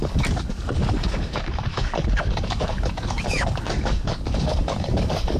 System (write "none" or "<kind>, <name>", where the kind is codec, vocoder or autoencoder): codec, DAC